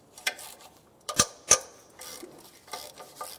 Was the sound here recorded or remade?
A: remade